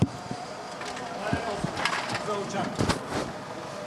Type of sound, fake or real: real